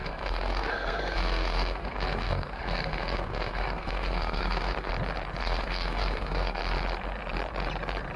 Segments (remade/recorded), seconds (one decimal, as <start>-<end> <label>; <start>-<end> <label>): 0.0-4.9 remade; 4.9-5.4 recorded; 5.4-6.6 remade; 6.6-8.2 recorded